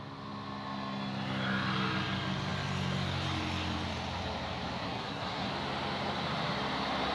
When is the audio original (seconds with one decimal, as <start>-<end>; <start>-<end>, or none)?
0.0-4.8; 5.5-7.1